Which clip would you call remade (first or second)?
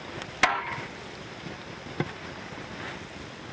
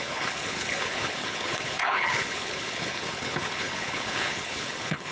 second